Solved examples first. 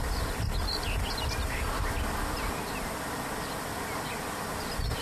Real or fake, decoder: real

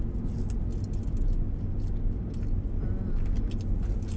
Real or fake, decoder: real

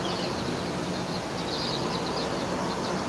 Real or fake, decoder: real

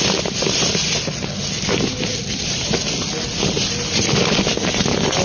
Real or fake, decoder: real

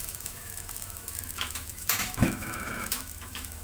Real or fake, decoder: fake, autoencoder, DAC-VAE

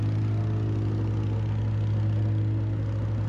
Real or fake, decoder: real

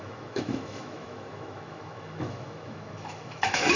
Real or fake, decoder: fake, autoencoder, DAC-VAE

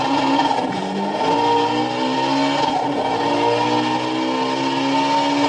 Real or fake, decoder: real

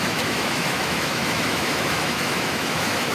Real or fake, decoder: fake, autoencoder, DAC-VAE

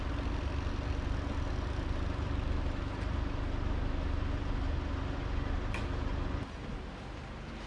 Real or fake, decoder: real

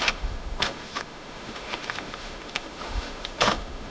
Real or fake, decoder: fake, autoencoder, DAC-VAE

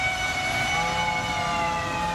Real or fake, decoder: real